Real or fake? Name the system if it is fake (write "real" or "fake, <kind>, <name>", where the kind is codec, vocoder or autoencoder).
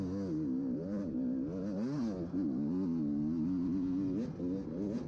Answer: real